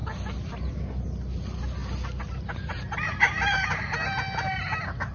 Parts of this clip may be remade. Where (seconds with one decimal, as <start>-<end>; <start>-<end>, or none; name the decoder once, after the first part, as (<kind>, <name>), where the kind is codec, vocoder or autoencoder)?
none